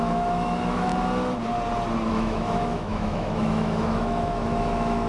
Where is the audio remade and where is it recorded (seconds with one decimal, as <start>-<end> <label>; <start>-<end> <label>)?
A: 0.0-0.9 remade; 0.9-2.1 recorded; 2.1-5.1 remade